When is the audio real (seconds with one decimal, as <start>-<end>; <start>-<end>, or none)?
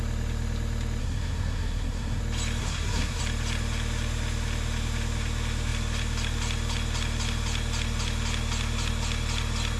0.0-1.0; 2.2-2.6; 3.2-9.8